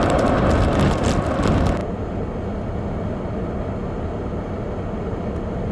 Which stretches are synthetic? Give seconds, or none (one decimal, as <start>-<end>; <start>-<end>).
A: none